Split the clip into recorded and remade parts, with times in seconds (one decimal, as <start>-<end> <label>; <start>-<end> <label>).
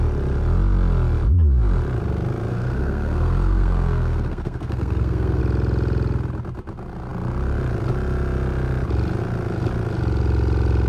0.0-2.5 recorded; 2.5-5.4 remade; 5.4-10.9 recorded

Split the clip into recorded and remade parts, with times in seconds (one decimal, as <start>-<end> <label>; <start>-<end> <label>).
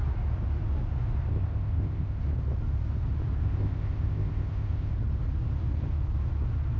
0.0-1.3 recorded; 1.3-2.2 remade; 2.2-3.4 recorded; 3.4-4.9 remade; 4.9-6.8 recorded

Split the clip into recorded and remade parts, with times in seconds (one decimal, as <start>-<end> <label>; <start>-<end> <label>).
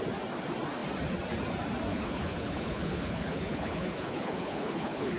0.0-1.9 recorded; 1.9-5.2 remade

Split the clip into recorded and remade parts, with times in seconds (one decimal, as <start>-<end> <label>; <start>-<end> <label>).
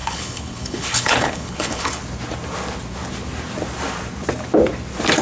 0.0-2.0 remade; 2.0-5.2 recorded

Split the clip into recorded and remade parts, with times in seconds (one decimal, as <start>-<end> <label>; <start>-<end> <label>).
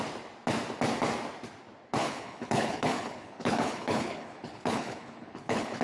0.0-2.0 recorded; 2.0-5.8 remade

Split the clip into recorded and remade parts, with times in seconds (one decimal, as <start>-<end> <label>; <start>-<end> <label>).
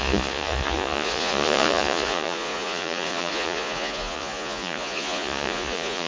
0.0-6.1 remade